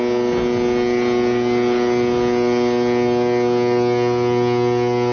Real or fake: real